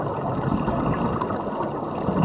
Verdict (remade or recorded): recorded